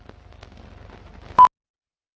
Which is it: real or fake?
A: real